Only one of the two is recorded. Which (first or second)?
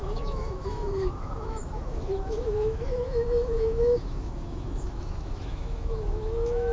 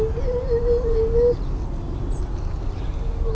second